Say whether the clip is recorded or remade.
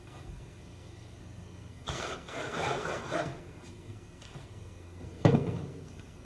remade